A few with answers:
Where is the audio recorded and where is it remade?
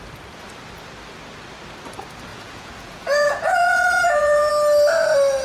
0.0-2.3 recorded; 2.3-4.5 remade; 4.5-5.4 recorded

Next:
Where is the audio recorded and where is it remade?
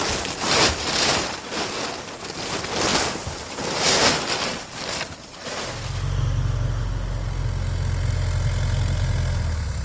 0.0-9.8 recorded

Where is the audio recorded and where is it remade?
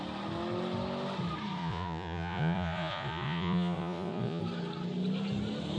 0.0-1.6 recorded; 1.6-4.4 remade; 4.4-5.8 recorded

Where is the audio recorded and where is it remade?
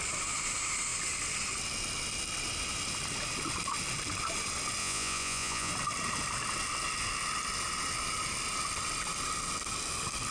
0.0-4.8 recorded; 4.8-5.7 remade; 5.7-10.3 recorded